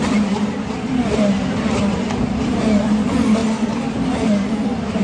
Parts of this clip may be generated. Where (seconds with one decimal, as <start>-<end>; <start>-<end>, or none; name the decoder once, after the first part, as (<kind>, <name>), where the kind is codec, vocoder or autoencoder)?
none